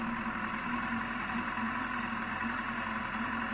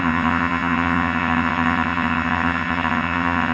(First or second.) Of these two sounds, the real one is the first